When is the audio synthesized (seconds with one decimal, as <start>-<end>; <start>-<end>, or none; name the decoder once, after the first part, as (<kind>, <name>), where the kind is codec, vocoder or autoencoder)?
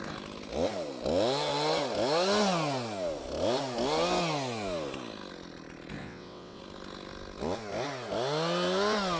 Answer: 6.0-6.6 (vocoder, WaveNeXt)